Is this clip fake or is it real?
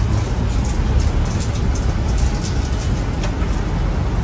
real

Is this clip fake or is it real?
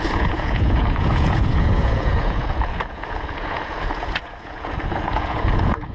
fake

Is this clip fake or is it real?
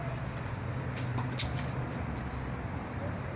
real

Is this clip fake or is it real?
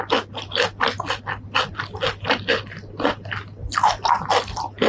real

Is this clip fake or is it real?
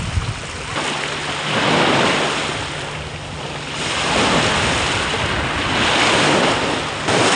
real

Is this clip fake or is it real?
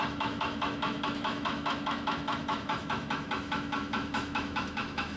fake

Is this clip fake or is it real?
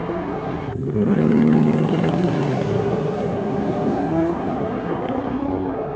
fake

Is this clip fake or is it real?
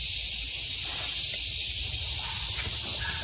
real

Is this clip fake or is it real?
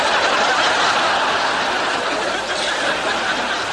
real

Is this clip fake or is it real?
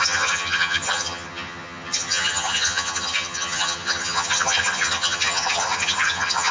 fake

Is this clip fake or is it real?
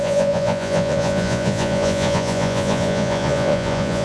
fake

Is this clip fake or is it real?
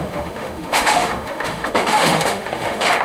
fake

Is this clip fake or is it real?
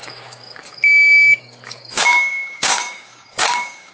fake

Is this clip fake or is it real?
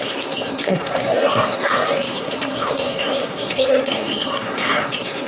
fake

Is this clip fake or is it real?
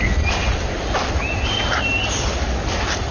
real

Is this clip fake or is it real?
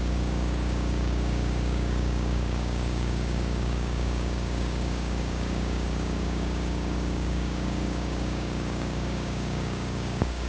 fake